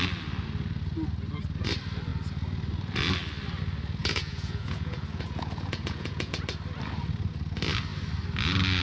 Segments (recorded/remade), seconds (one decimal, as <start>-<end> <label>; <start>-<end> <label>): 0.0-4.0 recorded; 4.0-6.4 remade; 6.4-8.8 recorded